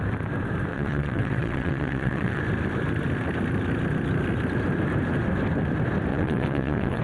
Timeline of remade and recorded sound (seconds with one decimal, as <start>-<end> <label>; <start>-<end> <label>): 0.0-0.7 recorded; 0.7-2.4 remade; 2.4-6.1 recorded; 6.1-7.0 remade